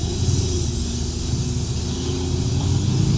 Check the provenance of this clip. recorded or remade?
recorded